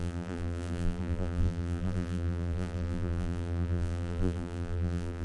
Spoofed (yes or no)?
yes